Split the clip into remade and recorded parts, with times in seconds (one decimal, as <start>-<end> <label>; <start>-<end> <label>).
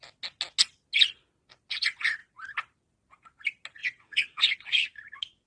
0.0-3.8 recorded; 3.8-4.4 remade; 4.4-5.5 recorded